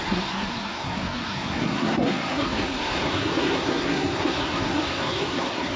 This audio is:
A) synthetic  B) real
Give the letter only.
A